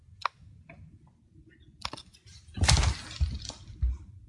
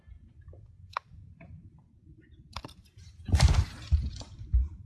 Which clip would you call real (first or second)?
first